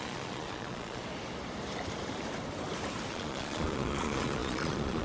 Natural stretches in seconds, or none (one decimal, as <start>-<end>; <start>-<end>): 1.0-3.1